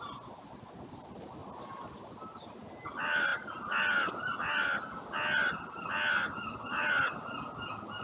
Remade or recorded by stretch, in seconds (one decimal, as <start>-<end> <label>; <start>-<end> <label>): 0.0-1.4 recorded; 1.4-2.1 remade; 2.1-3.3 recorded; 3.3-4.1 remade; 4.1-5.4 recorded; 5.4-7.0 remade; 7.0-8.0 recorded